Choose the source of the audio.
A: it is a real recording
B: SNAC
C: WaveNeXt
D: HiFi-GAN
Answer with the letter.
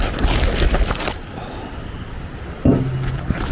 A